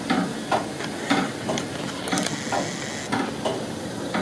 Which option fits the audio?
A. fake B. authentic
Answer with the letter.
B